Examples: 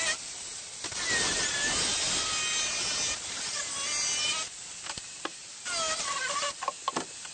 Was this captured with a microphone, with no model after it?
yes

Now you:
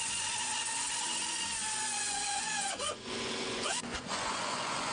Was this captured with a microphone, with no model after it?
no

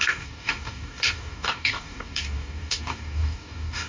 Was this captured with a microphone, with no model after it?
no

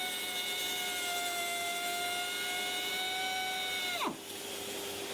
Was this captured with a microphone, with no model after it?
yes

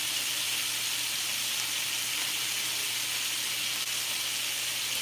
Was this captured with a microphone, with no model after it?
yes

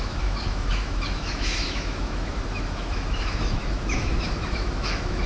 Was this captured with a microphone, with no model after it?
no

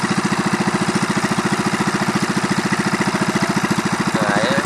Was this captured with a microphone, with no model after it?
yes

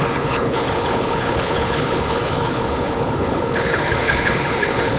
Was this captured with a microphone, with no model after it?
no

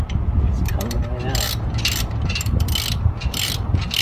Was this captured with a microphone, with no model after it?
yes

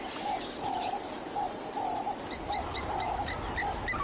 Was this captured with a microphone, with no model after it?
yes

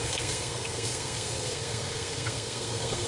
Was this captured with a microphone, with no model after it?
no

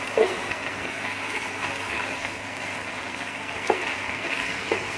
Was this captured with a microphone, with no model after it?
no